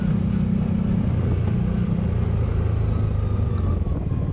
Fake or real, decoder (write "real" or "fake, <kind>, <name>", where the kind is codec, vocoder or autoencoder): real